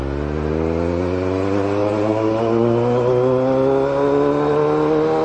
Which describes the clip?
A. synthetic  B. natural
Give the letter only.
B